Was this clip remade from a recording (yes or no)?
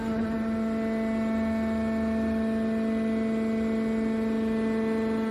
no